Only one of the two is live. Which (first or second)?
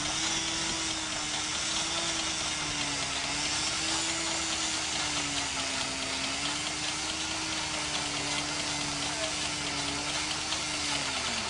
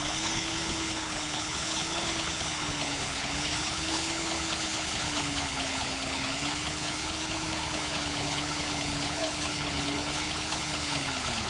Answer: first